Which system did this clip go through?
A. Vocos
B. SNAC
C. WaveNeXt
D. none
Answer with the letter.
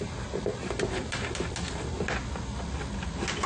D